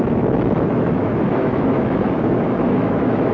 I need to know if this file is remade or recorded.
remade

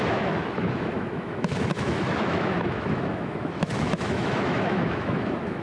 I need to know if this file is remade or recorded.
remade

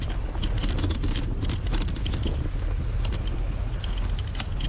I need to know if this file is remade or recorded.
recorded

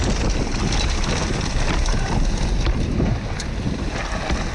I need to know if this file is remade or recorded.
recorded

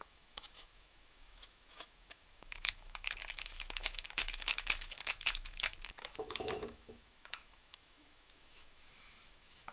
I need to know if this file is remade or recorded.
remade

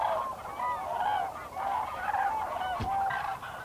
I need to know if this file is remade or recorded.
recorded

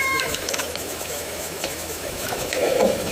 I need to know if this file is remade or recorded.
remade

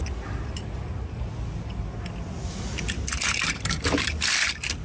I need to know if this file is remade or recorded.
recorded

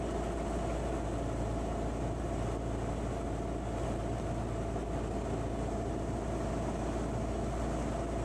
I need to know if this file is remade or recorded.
recorded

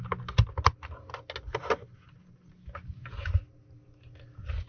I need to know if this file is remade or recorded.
recorded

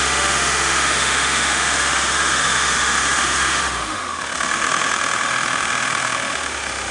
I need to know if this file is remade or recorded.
remade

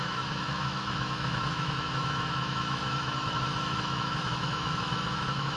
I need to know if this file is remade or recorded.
remade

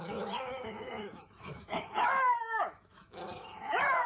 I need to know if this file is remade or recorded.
remade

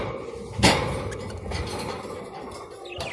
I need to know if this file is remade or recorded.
recorded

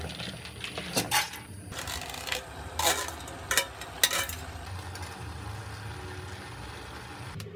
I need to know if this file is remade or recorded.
recorded